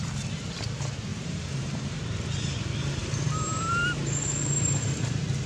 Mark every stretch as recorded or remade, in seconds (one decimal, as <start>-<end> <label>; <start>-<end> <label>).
0.0-1.1 recorded; 1.1-2.0 remade; 2.0-3.0 recorded; 3.0-4.0 remade; 4.0-5.5 recorded